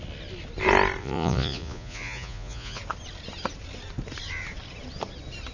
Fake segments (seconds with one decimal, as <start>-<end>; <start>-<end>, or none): 1.0-2.8